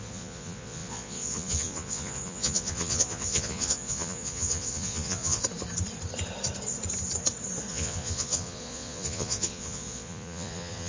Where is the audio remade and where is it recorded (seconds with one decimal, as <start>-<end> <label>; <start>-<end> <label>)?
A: 0.0-5.4 remade; 5.4-7.7 recorded; 7.7-10.9 remade